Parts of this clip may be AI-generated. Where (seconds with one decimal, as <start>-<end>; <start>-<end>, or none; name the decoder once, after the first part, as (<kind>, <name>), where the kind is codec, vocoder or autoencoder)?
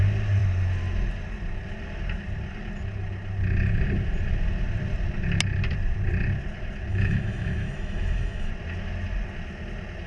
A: 6.9-8.5 (autoencoder, DAC-VAE)